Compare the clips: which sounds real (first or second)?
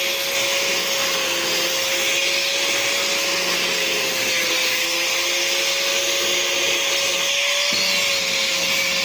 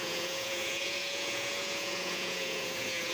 first